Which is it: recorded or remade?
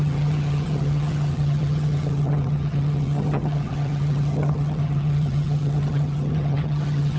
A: remade